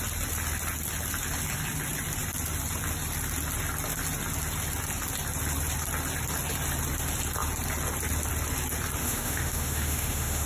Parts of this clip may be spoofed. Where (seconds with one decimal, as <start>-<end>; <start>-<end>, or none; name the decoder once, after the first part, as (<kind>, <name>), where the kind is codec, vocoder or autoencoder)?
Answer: 9.0-10.5 (autoencoder, DAC-VAE)